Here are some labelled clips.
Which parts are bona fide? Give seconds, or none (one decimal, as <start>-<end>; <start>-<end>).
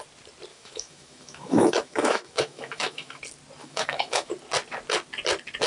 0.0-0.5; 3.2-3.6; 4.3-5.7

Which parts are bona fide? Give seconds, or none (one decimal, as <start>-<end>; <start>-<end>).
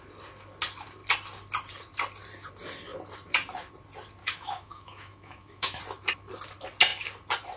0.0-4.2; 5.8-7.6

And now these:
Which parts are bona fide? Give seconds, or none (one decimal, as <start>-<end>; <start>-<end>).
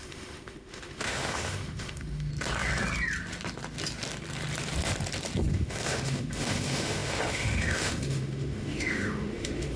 2.3-5.4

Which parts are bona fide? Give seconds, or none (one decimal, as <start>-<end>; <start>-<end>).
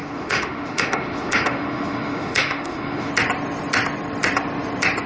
3.1-5.1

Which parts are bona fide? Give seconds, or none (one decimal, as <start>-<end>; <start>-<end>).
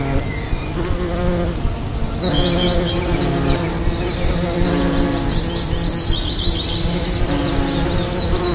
0.0-8.5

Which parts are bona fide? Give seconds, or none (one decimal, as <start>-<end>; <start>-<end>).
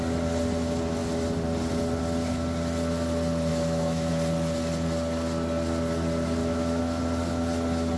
0.0-3.5; 4.1-6.4; 7.0-8.0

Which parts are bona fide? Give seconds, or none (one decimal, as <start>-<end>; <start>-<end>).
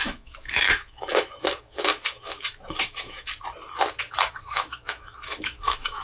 3.3-4.0